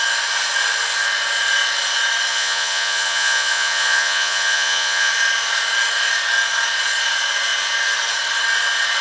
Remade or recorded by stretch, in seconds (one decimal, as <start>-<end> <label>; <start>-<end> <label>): 0.0-2.3 recorded; 2.3-5.1 remade; 5.1-9.0 recorded